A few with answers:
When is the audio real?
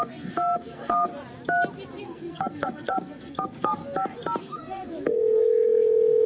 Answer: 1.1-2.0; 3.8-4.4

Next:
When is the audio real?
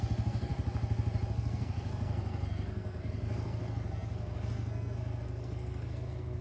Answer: 0.5-1.3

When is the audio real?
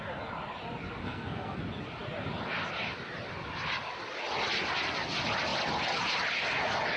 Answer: 0.0-1.0; 1.6-7.0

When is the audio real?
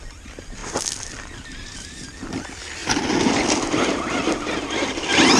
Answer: 0.0-5.4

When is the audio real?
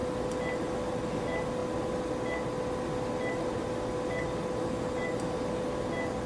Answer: 0.0-6.3